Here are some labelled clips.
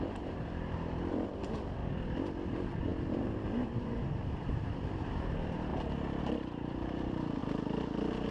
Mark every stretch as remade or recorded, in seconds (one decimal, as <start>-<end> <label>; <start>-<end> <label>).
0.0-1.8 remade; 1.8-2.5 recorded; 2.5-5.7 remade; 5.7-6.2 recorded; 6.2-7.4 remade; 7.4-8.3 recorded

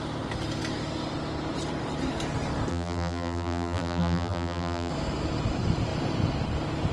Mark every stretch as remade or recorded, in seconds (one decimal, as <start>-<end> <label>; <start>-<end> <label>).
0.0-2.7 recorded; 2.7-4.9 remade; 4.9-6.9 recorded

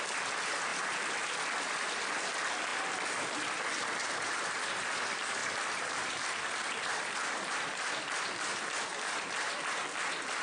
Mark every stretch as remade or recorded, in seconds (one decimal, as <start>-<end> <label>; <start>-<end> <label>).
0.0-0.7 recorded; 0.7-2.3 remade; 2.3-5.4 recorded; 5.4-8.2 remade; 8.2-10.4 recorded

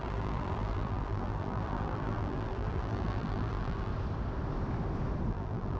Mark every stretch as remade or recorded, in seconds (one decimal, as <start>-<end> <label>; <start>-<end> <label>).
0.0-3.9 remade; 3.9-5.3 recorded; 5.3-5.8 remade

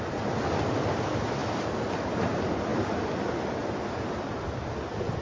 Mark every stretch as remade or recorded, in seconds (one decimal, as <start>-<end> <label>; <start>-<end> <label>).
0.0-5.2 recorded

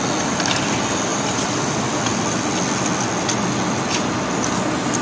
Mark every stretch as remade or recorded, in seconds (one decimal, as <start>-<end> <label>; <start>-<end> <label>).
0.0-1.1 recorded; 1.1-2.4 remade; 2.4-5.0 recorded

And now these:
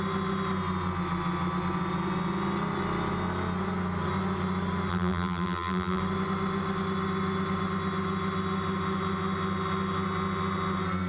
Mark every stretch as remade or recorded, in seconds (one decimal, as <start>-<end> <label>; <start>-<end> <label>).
0.0-4.9 recorded; 4.9-6.0 remade; 6.0-11.1 recorded